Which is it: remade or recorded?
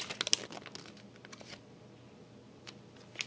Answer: recorded